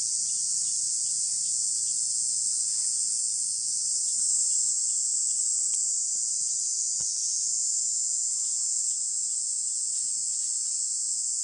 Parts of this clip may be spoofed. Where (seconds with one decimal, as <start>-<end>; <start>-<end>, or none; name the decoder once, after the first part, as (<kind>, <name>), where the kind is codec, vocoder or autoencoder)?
0.0-3.8 (vocoder, Vocos); 4.6-11.4